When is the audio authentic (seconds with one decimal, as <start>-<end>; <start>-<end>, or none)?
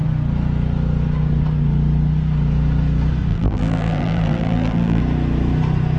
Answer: 0.0-3.3; 5.0-6.0